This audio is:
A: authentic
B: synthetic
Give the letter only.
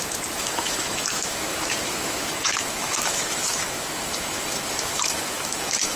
B